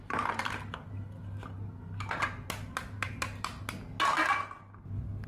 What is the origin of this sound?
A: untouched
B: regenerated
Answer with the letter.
A